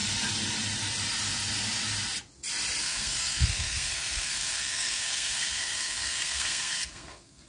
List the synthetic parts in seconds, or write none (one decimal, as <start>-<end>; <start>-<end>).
2.8-7.5